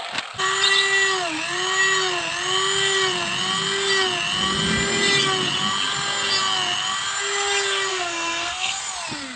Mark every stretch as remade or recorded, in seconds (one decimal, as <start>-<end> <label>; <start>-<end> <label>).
0.0-7.9 recorded; 7.9-8.8 remade; 8.8-9.4 recorded